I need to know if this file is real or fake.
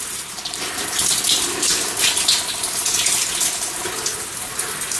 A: real